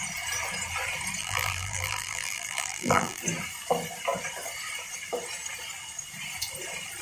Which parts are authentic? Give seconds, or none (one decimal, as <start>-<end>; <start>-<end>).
0.0-1.2; 3.2-7.0